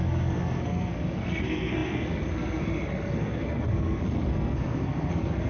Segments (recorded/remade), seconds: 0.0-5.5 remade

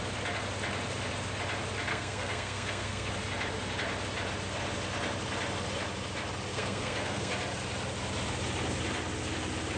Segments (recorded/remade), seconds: 0.0-1.9 recorded; 1.9-3.1 remade; 3.1-6.5 recorded; 6.5-7.3 remade; 7.3-9.8 recorded

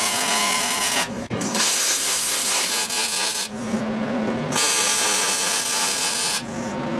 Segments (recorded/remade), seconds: 0.0-1.1 recorded; 1.1-2.7 remade; 2.7-7.0 recorded